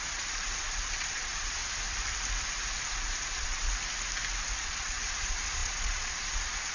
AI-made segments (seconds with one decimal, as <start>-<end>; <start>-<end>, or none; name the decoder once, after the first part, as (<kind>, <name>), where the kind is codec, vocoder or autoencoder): 0.0-1.6 (vocoder, Vocos); 2.8-3.7; 4.6-6.7